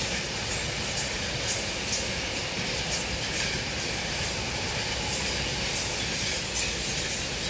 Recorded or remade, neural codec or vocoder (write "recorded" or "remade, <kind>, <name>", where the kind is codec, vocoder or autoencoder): recorded